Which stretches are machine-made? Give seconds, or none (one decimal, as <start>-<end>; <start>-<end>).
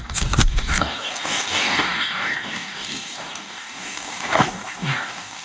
0.0-5.4